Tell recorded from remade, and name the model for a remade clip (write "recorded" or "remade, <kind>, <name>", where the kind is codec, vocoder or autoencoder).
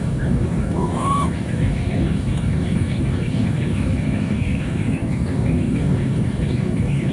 remade, codec, DAC